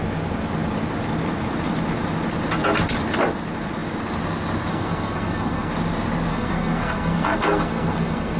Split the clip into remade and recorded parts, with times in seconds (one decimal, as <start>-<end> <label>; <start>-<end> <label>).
0.0-4.7 recorded; 4.7-5.7 remade; 5.7-6.3 recorded; 6.3-8.4 remade